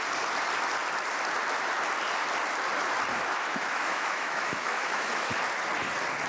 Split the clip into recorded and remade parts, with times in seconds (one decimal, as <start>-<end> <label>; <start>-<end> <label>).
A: 0.0-3.1 recorded; 3.1-5.3 remade; 5.3-6.3 recorded